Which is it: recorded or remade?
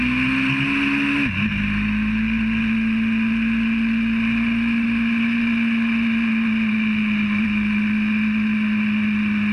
recorded